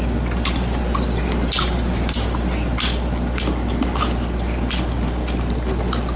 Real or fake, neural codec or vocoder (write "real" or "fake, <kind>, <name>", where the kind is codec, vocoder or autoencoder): real